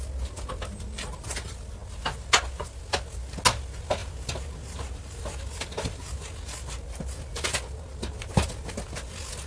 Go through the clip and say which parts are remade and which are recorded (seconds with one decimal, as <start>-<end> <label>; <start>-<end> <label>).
0.0-9.5 recorded